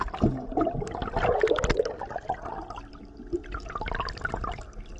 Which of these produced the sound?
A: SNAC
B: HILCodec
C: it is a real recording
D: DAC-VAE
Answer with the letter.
C